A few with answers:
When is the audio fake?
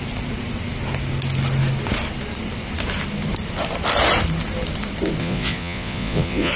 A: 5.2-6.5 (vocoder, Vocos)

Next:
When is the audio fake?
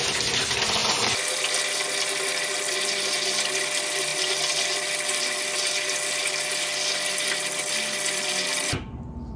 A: none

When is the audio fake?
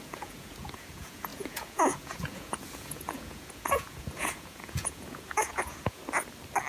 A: 0.0-6.0 (vocoder, Vocos)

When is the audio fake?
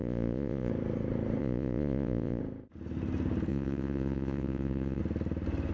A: 0.0-0.7 (vocoder, Vocos); 1.4-2.4; 3.5-5.0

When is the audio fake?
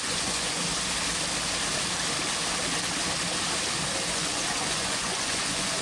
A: 0.0-0.6 (vocoder, Vocos); 4.1-5.8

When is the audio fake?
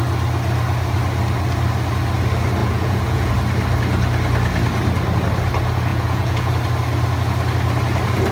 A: 2.6-3.3 (vocoder, Vocos); 5.9-6.5